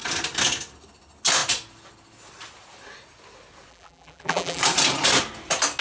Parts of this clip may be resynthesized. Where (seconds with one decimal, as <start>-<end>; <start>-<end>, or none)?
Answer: 3.7-4.6